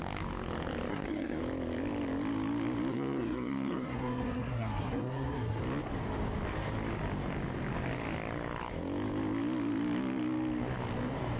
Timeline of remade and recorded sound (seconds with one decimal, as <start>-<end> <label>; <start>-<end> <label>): 0.0-0.9 recorded; 0.9-1.4 remade; 1.4-2.9 recorded; 2.9-5.6 remade; 5.6-11.4 recorded